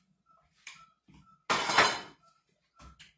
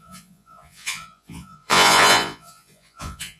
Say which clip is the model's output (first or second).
second